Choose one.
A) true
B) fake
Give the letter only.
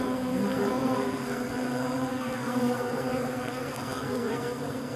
B